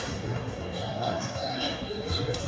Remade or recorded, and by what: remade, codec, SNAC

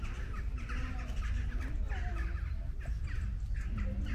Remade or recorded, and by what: recorded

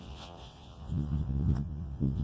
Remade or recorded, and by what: remade, vocoder, WaveNeXt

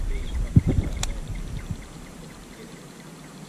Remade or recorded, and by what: remade, vocoder, BigVGAN v2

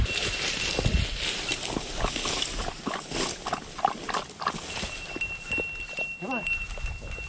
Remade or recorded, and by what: recorded